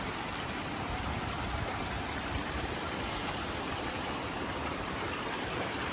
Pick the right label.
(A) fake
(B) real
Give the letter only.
A